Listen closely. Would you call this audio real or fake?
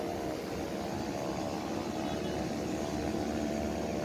real